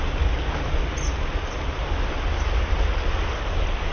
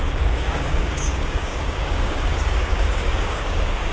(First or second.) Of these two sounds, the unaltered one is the first